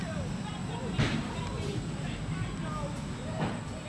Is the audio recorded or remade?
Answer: remade